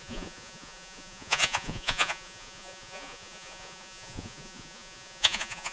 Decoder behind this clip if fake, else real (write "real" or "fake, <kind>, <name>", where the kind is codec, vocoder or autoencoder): fake, vocoder, Vocos